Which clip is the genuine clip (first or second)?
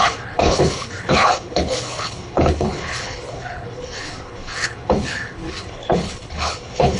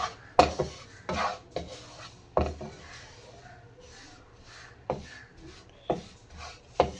second